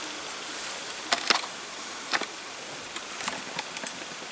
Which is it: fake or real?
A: real